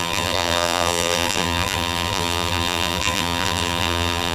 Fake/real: fake